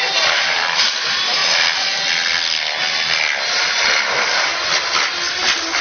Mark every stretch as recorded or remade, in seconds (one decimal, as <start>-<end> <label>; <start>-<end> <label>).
0.0-1.4 remade; 1.4-3.4 recorded; 3.4-4.5 remade; 4.5-5.8 recorded